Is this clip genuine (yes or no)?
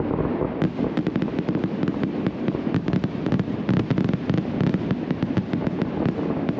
yes